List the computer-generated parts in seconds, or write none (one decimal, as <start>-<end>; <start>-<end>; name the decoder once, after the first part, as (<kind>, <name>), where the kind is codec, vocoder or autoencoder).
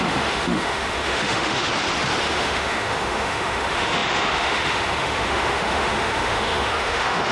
0.0-1.7 (autoencoder, DAC-VAE); 2.2-7.3